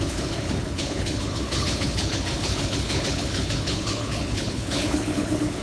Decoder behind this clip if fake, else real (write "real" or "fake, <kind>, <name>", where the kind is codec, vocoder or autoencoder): fake, codec, HILCodec